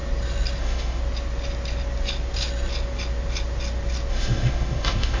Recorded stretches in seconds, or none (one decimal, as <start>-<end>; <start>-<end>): 0.0-0.6; 1.0-4.1